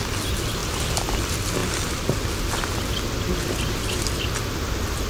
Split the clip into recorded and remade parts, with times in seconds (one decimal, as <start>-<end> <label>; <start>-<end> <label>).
0.0-0.6 recorded; 0.6-1.2 remade; 1.2-1.6 recorded; 1.6-3.0 remade; 3.0-5.1 recorded